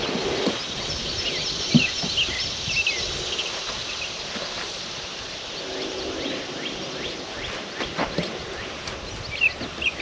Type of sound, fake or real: real